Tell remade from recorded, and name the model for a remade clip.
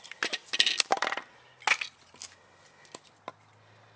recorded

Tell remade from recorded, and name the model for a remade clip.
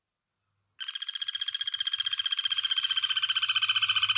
recorded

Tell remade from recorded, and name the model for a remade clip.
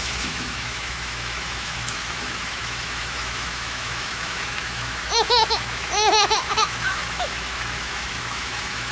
remade, autoencoder, DAC-VAE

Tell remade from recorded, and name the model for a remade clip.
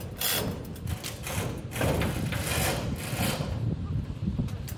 recorded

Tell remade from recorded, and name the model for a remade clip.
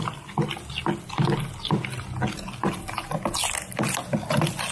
recorded